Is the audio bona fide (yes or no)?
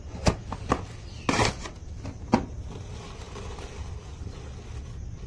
yes